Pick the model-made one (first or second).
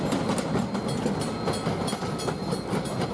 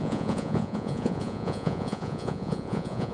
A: second